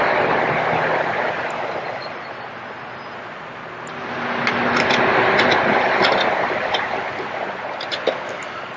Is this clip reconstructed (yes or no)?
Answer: no